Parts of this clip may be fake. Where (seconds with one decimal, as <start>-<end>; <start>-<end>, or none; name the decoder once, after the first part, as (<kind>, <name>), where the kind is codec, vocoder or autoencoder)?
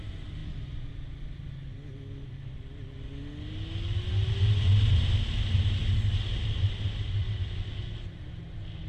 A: none